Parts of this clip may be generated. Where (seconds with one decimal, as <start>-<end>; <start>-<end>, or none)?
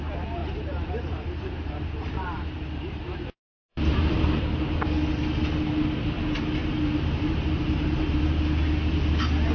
0.4-4.8; 6.6-8.2